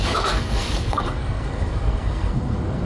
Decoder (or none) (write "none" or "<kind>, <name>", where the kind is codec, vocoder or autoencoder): codec, SNAC